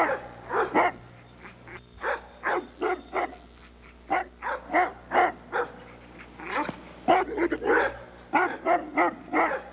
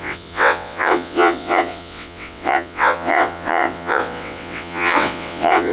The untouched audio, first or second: first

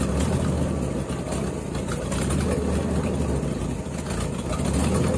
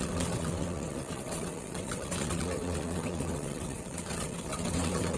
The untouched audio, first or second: first